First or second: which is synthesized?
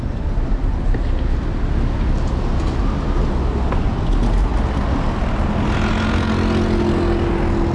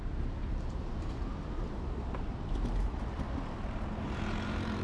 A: second